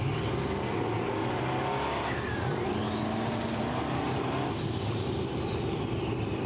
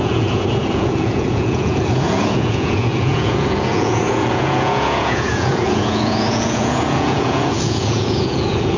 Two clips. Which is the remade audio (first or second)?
second